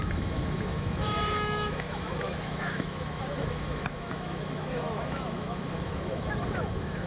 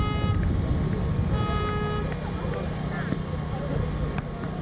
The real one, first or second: second